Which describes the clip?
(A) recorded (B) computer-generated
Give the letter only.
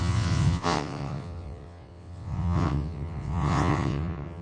B